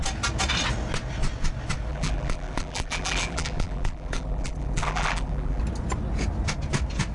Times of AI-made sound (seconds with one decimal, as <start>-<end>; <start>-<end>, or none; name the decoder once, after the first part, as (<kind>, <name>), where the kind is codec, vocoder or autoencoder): 1.9-5.6 (vocoder, BigVGAN v2)